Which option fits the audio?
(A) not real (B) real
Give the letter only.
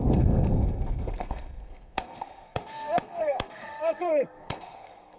A